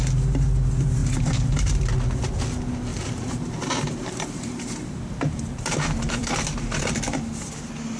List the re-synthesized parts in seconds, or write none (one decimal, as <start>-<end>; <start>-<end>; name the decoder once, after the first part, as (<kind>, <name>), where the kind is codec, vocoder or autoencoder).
1.0-1.9 (vocoder, BigVGAN v2); 2.9-7.0